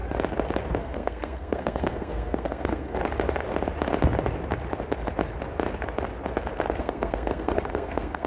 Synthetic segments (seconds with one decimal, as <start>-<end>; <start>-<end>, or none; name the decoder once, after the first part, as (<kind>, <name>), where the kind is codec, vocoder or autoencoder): 0.8-3.0 (codec, SNAC); 6.8-8.3